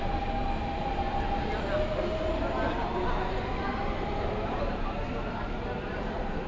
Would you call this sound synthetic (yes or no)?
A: no